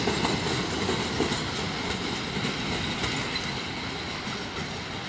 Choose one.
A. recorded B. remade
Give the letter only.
A